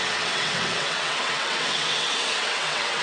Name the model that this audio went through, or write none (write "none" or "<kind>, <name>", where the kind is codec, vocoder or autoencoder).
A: vocoder, WaveNeXt